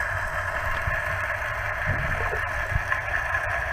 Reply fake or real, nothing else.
real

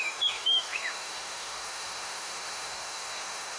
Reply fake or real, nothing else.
fake